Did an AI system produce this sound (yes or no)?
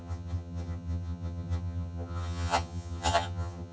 yes